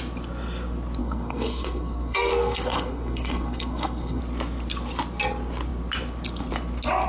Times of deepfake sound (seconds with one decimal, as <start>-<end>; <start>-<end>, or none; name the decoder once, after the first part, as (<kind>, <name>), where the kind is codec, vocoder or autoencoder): 1.0-4.2 (codec, SNAC)